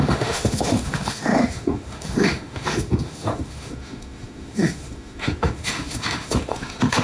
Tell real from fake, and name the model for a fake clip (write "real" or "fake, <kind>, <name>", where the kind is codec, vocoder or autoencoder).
fake, autoencoder, DAC-VAE